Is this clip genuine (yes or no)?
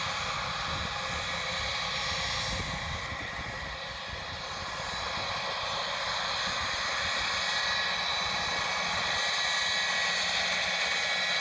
yes